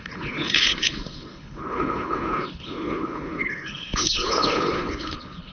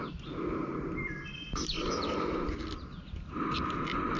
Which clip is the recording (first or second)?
second